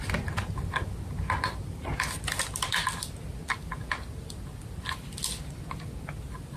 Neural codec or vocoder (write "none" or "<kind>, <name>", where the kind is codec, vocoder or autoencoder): none